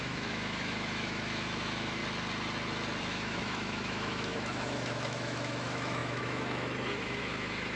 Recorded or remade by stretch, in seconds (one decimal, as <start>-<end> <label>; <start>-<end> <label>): 0.0-2.0 remade; 2.0-3.0 recorded; 3.0-7.8 remade